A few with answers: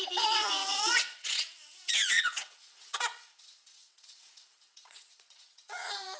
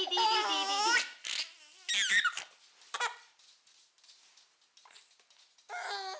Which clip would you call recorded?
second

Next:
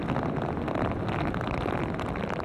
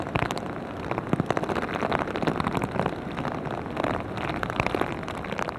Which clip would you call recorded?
first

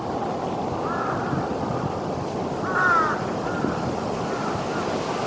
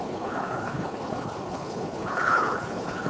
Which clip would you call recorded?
first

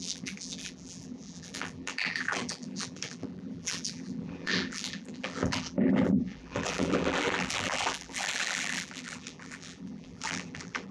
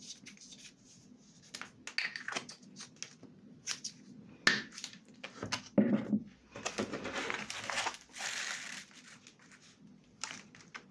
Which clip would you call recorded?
second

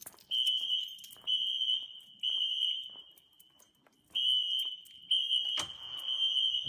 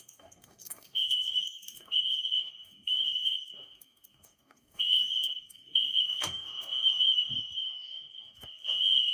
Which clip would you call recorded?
first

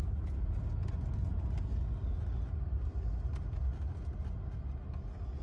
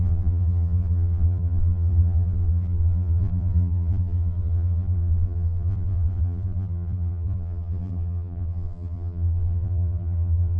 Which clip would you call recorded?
first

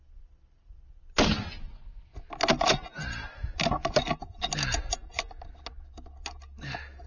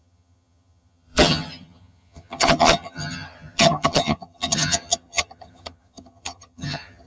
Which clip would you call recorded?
first